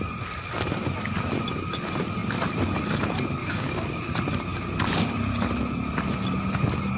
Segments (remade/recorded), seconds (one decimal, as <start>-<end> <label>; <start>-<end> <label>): 0.0-3.4 recorded; 3.4-4.0 remade; 4.0-7.0 recorded